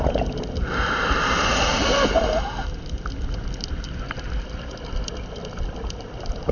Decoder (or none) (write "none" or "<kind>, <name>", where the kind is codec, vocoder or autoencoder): none